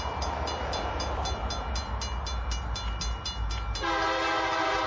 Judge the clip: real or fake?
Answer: real